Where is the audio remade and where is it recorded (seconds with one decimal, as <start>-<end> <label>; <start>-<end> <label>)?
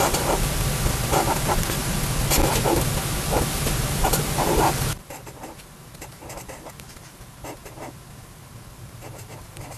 0.0-1.8 remade; 1.8-3.8 recorded; 3.8-9.8 remade